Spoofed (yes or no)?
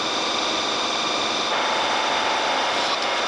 no